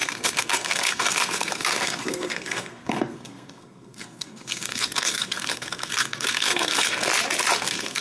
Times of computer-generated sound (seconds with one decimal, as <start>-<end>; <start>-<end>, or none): 0.0-7.1; 7.6-8.0